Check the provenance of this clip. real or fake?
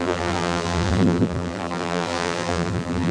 fake